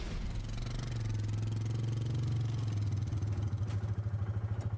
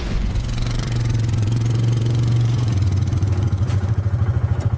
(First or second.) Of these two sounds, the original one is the first